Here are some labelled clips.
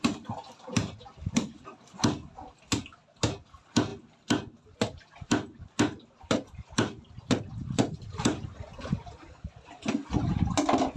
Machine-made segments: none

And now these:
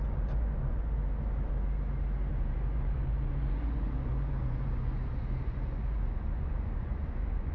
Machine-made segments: 0.0-1.0; 2.3-7.5

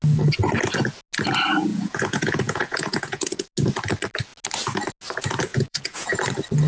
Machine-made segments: 1.7-3.5; 5.5-6.2

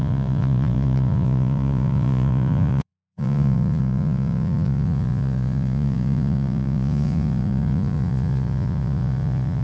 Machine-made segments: 0.0-9.6